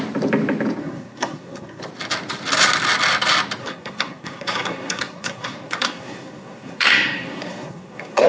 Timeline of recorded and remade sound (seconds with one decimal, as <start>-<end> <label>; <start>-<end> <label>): 0.0-0.8 recorded; 0.8-1.8 remade; 1.8-3.6 recorded; 3.6-8.3 remade